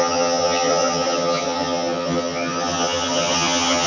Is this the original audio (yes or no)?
no